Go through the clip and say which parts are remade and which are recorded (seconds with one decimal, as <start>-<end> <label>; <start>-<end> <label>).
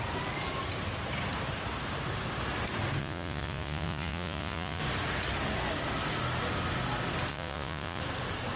0.0-3.0 recorded; 3.0-4.8 remade; 4.8-7.3 recorded; 7.3-8.0 remade; 8.0-8.6 recorded